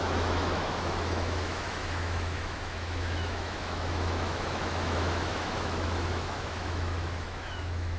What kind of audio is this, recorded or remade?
remade